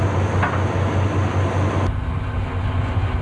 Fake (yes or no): no